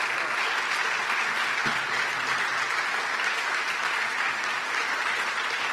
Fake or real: real